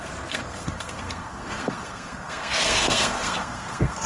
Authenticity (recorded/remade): remade